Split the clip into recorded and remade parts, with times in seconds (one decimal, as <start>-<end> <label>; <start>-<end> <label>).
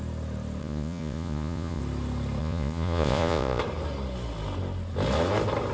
0.0-0.6 recorded; 0.6-1.8 remade; 1.8-2.4 recorded; 2.4-3.6 remade; 3.6-5.7 recorded